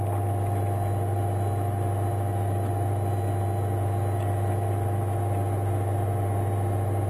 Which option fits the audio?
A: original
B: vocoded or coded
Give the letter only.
A